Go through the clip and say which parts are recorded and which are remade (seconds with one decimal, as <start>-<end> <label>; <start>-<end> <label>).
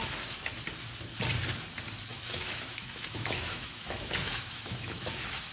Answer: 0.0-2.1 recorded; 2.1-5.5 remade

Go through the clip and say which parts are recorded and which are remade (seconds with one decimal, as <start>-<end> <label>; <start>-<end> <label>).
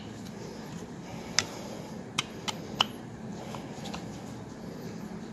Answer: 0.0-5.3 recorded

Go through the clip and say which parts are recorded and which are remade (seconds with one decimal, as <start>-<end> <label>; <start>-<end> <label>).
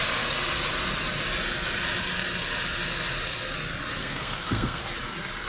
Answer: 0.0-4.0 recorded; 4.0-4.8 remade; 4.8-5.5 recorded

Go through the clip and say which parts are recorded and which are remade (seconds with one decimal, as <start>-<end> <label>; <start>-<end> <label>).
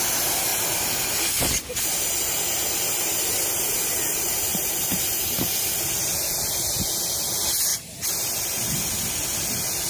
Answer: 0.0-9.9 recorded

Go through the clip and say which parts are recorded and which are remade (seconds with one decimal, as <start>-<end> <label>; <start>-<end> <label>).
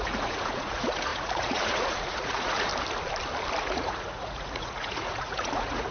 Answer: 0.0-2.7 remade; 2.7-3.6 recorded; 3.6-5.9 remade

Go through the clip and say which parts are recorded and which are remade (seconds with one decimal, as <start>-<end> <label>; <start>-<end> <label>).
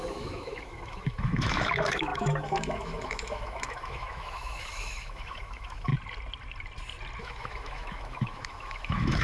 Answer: 0.0-5.9 remade; 5.9-7.2 recorded; 7.2-9.2 remade